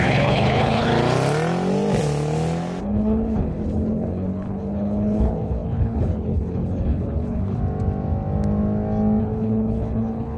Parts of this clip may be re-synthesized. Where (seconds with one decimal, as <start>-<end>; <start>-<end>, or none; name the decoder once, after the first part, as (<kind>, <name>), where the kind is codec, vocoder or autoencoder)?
0.0-0.9 (codec, HILCodec); 2.8-7.6; 9.2-10.4